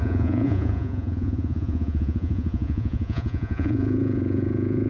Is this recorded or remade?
remade